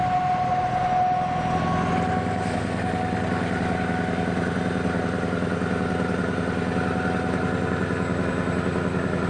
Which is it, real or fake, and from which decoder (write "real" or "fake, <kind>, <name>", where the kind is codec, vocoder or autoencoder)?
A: real